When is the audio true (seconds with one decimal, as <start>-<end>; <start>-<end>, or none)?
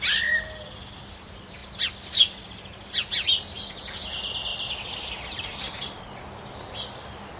0.0-4.5; 6.5-7.4